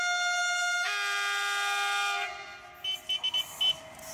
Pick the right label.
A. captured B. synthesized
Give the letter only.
A